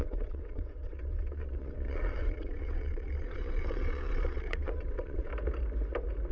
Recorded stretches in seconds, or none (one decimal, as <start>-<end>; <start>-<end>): 5.3-6.3